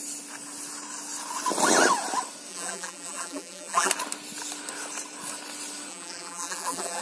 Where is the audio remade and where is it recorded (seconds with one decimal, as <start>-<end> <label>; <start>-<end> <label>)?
0.0-2.5 recorded; 2.5-3.9 remade; 3.9-5.9 recorded; 5.9-7.0 remade